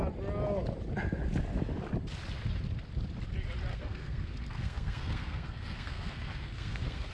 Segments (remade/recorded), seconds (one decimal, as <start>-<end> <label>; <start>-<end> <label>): 0.0-3.7 recorded; 3.7-7.1 remade